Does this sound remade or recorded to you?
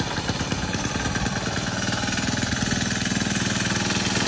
recorded